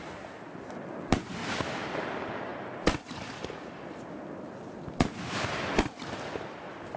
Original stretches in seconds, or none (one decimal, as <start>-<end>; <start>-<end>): 0.0-7.0